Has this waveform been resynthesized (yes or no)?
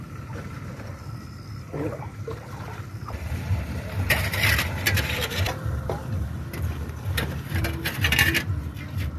yes